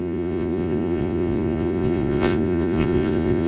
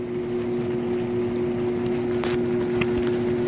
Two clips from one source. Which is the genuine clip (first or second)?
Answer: second